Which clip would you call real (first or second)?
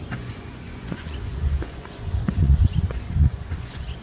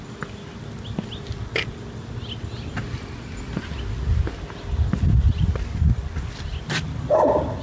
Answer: second